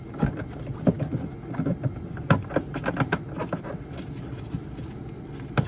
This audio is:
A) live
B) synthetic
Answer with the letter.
A